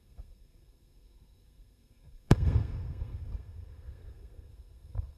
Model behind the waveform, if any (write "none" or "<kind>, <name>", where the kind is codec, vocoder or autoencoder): codec, SNAC